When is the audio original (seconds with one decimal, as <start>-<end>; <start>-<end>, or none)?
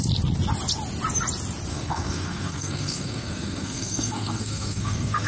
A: 0.0-1.7